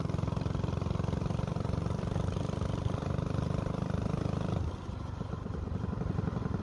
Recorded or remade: recorded